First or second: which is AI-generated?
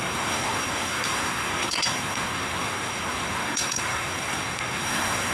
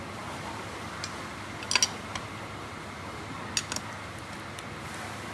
first